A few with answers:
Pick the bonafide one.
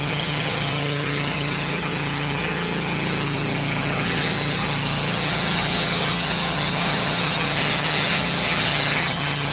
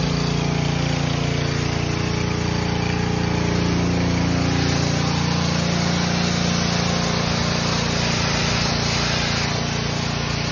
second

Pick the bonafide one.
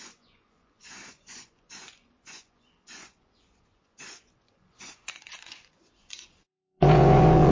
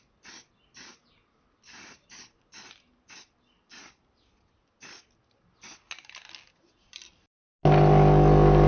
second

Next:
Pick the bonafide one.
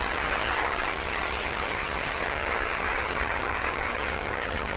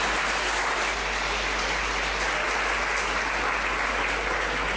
second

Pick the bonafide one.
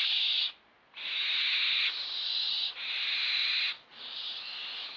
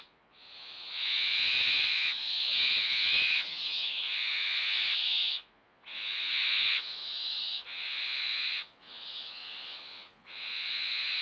first